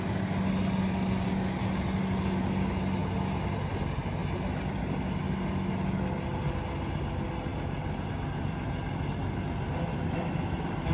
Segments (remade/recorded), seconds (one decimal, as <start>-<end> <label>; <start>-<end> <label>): 0.0-10.9 recorded